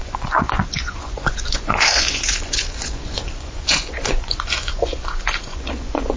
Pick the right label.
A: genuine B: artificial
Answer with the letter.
B